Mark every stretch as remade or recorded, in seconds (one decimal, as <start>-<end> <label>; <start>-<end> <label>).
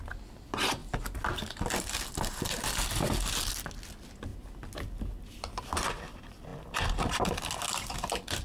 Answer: 0.0-8.4 recorded